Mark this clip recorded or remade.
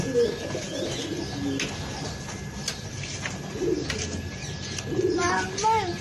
recorded